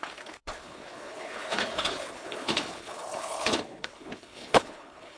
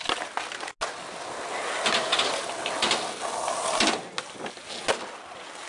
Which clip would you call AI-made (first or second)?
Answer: first